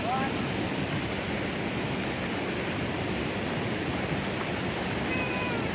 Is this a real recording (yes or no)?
yes